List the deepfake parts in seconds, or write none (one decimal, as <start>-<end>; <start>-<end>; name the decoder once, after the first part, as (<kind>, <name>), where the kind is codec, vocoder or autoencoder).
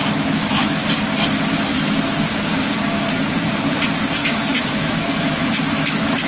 0.0-0.8 (autoencoder, DAC-VAE); 4.2-6.3